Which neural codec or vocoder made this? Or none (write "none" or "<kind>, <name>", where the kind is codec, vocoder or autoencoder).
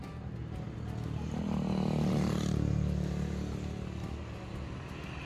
none